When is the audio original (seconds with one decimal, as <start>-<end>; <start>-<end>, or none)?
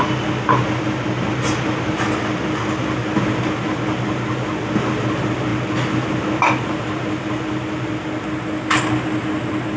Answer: 0.0-9.8